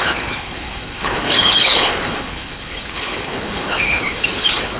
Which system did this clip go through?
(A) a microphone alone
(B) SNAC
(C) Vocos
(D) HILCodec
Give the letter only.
D